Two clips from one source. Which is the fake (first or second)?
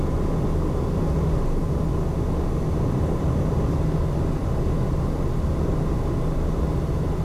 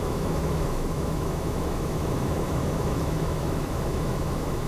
second